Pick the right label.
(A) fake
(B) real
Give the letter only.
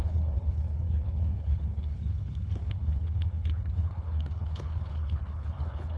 A